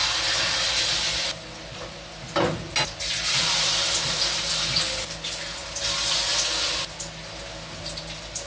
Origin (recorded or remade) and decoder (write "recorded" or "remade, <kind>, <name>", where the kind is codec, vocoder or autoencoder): recorded